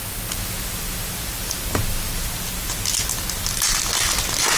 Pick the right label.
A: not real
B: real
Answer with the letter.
B